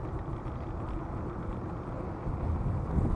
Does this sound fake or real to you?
real